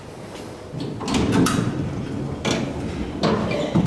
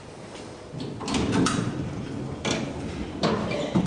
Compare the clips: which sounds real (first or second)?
first